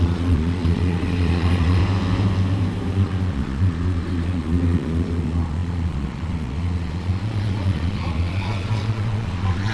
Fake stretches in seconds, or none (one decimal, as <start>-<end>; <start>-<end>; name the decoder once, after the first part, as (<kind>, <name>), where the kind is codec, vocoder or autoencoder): 0.0-1.8 (vocoder, Vocos); 2.9-9.7